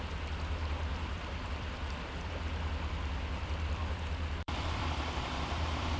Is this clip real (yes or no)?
no